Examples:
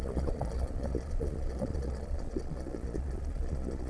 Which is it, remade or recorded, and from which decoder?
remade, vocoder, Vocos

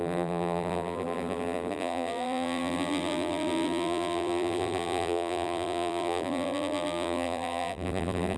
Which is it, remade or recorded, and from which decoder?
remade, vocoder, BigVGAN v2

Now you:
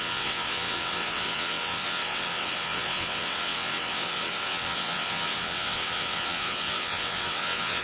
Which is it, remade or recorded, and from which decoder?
remade, vocoder, WaveNeXt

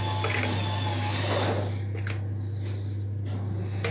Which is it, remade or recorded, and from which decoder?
recorded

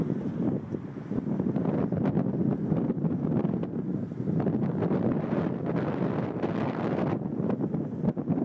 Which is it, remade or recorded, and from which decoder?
recorded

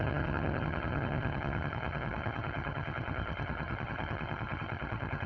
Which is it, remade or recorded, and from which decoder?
remade, vocoder, HiFi-GAN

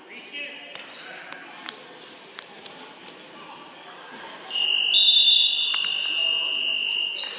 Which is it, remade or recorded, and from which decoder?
recorded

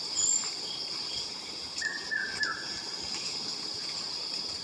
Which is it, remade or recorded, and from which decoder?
recorded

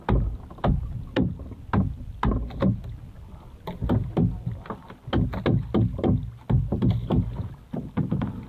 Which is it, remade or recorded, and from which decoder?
recorded